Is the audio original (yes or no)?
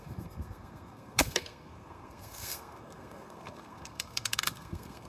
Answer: no